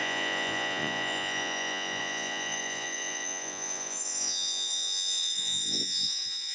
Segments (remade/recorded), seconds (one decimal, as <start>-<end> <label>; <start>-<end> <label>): 0.0-6.5 remade